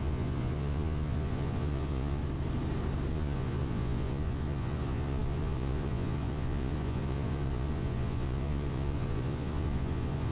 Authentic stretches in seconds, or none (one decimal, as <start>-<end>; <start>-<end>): 2.2-3.1